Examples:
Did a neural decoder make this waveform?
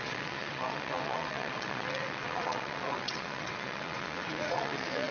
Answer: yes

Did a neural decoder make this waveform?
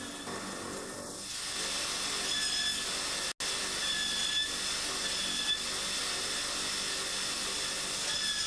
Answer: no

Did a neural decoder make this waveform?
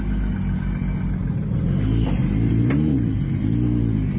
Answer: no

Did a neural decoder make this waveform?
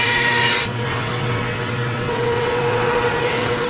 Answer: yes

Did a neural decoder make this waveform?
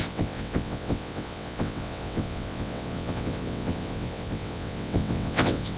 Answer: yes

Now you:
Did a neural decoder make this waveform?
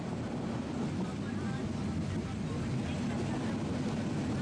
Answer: no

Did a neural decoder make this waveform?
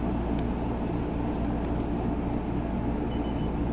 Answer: no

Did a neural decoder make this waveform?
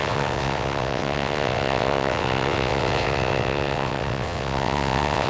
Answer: yes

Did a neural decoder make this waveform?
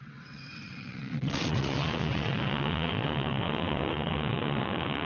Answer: yes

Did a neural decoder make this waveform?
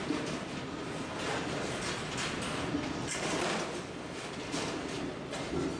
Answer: no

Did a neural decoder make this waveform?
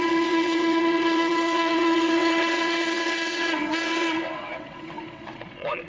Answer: yes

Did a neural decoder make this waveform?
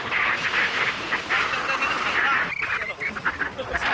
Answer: no